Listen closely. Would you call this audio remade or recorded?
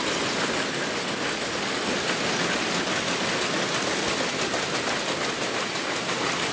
recorded